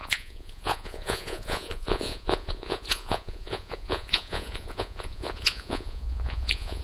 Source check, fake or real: fake